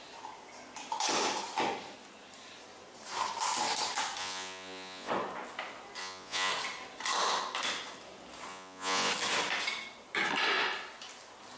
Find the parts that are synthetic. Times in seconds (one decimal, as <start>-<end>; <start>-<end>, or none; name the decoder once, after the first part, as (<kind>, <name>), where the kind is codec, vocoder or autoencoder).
4.2-5.1 (vocoder, Vocos); 6.0-6.5; 8.5-9.1